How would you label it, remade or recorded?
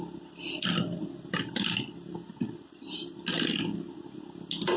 recorded